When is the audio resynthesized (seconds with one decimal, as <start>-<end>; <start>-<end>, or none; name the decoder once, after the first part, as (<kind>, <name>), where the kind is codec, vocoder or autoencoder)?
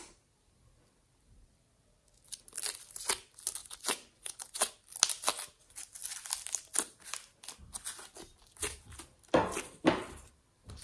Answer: 3.6-4.7 (vocoder, Vocos)